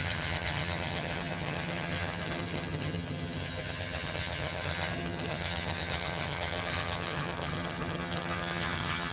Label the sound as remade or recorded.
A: remade